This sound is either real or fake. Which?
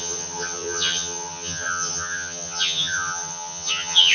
fake